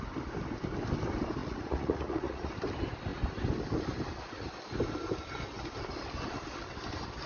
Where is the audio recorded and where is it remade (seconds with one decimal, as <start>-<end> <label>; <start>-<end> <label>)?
0.0-1.4 recorded; 1.4-2.5 remade; 2.5-7.3 recorded